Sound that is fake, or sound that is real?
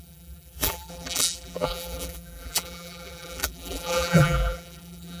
fake